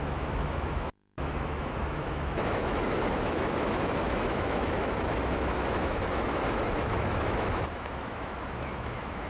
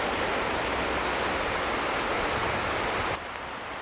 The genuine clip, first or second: second